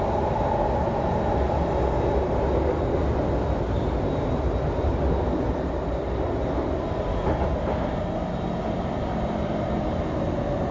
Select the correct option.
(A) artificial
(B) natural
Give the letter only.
B